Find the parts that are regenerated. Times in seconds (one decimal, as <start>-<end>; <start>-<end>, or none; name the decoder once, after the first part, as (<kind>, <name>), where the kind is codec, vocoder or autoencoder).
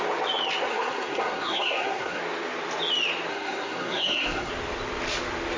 0.7-2.2 (codec, SNAC); 3.3-4.5